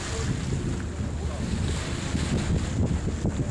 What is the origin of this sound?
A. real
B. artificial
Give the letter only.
A